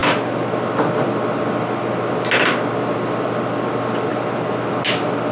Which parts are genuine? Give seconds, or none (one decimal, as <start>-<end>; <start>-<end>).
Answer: 0.0-5.3